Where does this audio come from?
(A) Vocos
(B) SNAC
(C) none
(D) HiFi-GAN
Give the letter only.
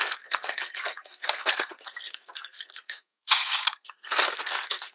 B